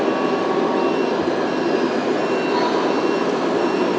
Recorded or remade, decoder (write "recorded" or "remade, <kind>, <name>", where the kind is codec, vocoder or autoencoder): recorded